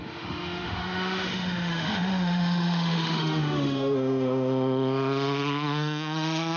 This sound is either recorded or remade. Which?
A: remade